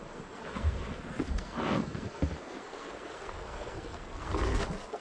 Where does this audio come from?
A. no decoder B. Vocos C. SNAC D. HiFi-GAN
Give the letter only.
C